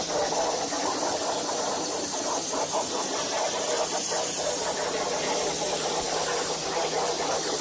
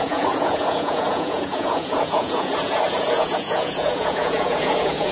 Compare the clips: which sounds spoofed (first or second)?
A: second